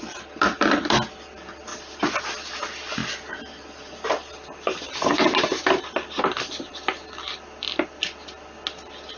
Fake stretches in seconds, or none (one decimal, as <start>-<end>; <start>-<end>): none